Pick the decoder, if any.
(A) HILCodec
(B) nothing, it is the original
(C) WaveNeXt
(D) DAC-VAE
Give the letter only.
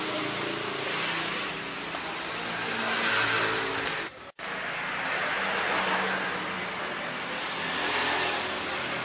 B